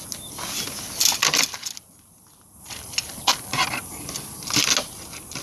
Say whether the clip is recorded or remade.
recorded